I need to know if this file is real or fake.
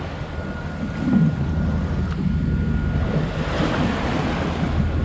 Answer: real